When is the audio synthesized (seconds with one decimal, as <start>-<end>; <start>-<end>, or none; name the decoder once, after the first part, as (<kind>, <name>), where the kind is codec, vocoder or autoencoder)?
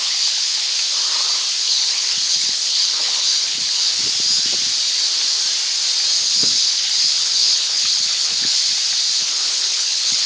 0.0-0.7 (codec, HILCodec); 1.6-4.0; 6.2-8.6; 9.2-10.3